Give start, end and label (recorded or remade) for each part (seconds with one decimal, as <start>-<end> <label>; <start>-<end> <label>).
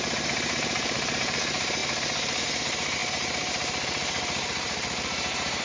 0.0-5.6 remade